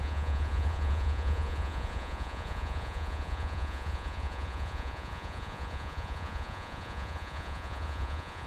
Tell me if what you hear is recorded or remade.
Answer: remade